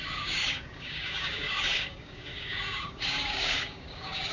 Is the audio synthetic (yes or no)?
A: yes